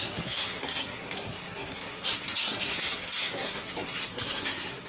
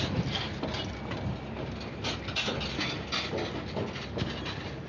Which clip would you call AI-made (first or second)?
first